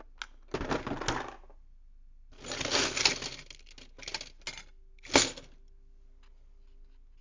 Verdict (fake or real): real